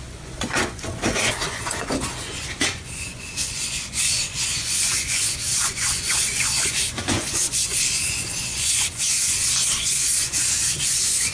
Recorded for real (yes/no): no